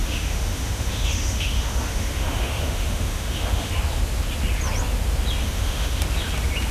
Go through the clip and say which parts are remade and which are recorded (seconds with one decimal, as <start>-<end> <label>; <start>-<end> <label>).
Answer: 0.0-3.7 remade; 3.7-5.4 recorded; 5.4-6.0 remade; 6.0-6.7 recorded